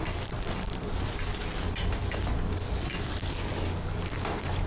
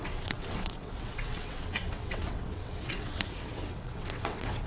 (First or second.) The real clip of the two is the first